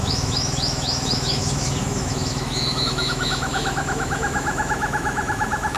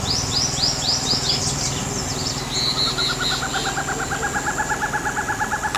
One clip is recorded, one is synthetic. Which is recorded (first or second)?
second